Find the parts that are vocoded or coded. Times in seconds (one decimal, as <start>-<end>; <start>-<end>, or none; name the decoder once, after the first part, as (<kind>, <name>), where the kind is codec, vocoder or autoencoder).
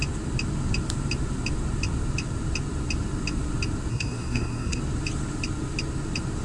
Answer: 3.9-4.8 (codec, SNAC)